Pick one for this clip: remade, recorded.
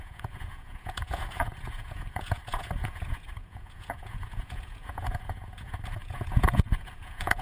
remade